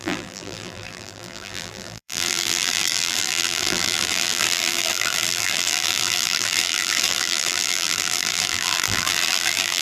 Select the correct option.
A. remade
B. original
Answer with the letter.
A